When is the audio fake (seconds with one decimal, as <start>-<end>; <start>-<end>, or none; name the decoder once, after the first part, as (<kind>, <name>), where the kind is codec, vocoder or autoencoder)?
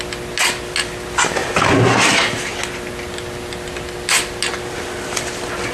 none